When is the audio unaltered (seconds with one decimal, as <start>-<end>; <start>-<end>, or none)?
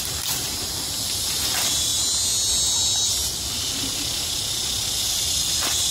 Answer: 0.0-5.9